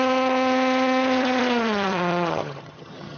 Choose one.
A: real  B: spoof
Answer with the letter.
B